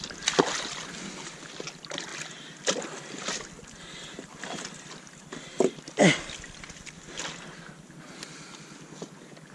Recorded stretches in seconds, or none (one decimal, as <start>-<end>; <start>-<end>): 0.0-9.5